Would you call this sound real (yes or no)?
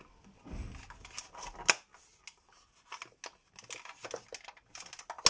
yes